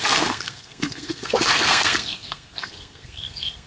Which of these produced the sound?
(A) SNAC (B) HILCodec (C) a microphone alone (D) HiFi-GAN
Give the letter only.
A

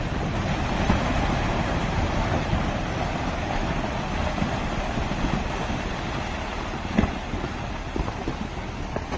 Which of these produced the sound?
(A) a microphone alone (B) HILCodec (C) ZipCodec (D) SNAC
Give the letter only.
A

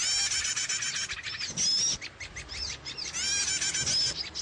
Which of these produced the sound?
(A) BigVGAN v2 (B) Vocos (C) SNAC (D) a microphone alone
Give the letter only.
D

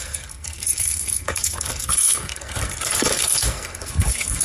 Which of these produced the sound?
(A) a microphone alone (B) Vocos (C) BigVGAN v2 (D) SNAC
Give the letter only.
D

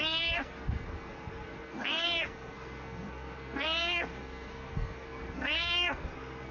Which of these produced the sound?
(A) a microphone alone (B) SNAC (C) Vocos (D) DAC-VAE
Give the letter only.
B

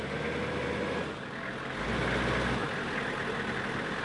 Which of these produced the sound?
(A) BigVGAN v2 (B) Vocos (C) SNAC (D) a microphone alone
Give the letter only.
D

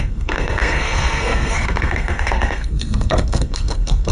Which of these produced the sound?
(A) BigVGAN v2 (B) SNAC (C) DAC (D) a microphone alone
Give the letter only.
B